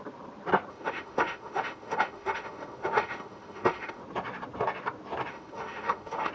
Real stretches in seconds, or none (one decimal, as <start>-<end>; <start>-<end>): 0.0-0.7; 4.0-5.3